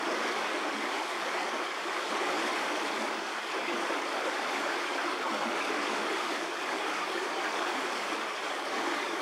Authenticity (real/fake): fake